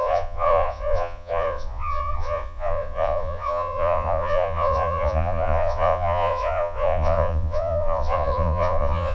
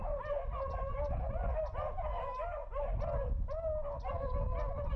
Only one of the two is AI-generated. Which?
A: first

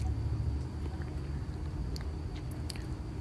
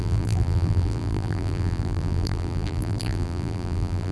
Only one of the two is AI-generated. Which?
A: second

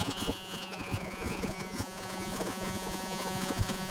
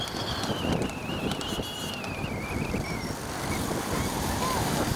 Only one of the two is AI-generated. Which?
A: first